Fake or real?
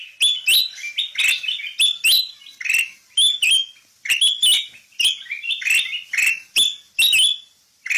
real